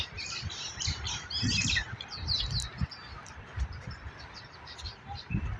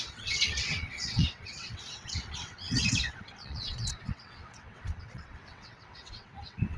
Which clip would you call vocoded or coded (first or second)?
second